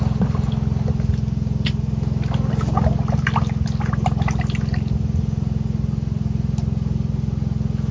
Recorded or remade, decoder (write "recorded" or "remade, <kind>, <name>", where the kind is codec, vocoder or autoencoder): recorded